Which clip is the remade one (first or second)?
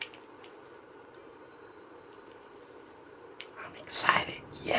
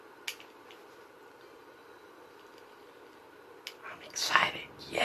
first